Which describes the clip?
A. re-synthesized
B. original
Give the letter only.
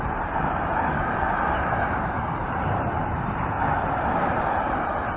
B